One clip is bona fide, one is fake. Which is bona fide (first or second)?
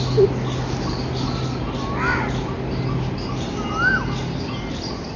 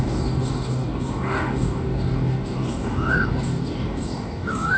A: first